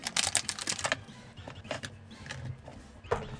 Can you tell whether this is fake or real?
real